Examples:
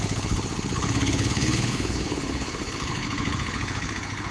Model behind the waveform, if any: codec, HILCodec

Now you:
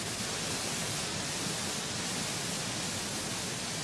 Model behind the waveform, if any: none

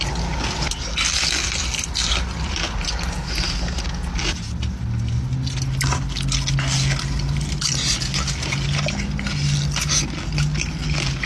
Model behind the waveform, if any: none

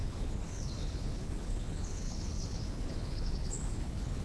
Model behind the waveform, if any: codec, HILCodec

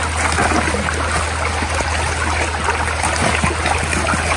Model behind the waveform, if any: none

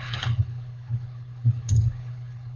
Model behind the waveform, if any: codec, HILCodec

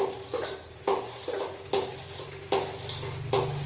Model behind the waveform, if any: none